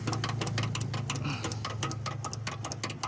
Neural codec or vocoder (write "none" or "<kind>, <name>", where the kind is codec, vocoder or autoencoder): none